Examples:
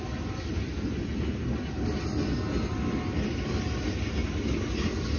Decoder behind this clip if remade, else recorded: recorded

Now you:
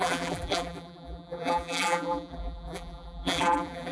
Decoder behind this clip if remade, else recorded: remade, vocoder, BigVGAN v2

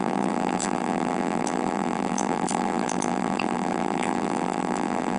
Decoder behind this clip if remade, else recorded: remade, vocoder, BigVGAN v2